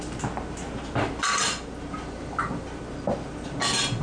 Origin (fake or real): real